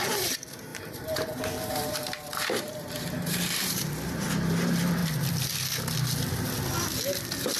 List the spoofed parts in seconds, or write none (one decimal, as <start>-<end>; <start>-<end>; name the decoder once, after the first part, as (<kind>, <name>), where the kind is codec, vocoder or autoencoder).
0.7-4.3 (vocoder, BigVGAN v2)